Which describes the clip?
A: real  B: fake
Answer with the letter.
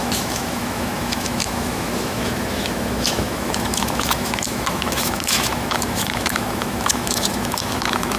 B